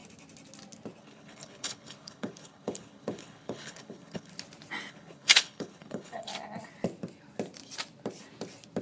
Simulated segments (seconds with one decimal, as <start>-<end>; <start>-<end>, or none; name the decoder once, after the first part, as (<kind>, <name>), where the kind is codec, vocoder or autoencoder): 1.0-4.3 (codec, HILCodec); 4.9-6.3